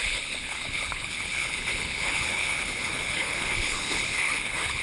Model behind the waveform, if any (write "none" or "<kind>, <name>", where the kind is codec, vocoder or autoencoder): codec, HILCodec